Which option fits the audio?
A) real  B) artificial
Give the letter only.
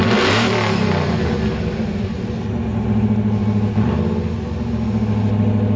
A